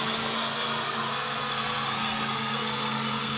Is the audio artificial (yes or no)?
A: yes